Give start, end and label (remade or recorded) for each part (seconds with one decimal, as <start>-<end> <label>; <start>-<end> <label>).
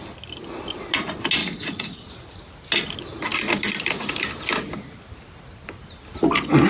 0.0-1.4 recorded; 1.4-2.1 remade; 2.1-6.7 recorded